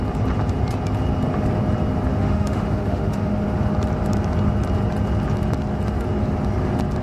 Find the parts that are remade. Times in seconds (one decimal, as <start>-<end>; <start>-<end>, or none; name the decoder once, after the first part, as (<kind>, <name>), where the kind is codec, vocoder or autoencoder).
2.1-3.3 (autoencoder, DAC-VAE)